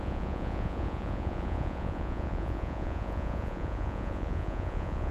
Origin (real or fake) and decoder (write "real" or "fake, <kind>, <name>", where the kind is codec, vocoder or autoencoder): fake, vocoder, Vocos